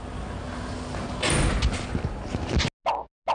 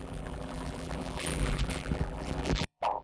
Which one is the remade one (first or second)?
second